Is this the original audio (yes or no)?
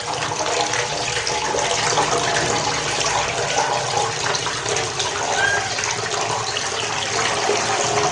yes